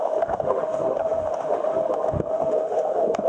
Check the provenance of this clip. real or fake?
fake